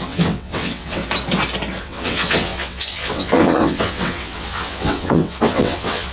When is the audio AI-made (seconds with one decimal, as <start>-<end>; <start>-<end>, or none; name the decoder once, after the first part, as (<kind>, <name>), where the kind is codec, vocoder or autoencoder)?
0.0-1.0 (vocoder, WaveNeXt); 1.8-6.1